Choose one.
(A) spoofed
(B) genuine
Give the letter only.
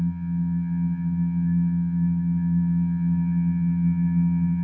A